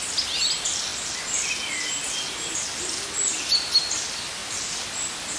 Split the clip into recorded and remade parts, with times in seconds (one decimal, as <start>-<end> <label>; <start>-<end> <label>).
0.0-5.4 recorded